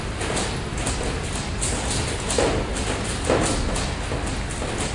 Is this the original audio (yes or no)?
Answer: yes